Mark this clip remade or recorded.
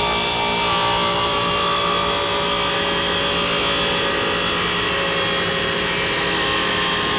recorded